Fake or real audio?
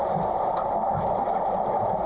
real